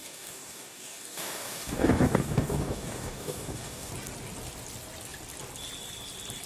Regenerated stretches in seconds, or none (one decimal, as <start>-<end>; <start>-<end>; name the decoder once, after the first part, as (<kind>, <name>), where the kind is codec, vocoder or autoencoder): 0.0-3.9 (codec, DAC)